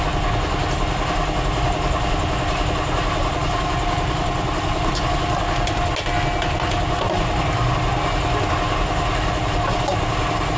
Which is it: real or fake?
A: real